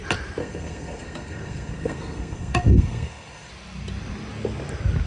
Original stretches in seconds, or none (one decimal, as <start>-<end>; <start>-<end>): 0.0-0.4; 3.5-5.1